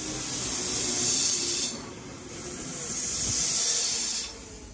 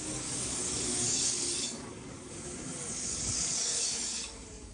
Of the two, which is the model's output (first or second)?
second